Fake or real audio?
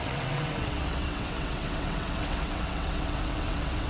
fake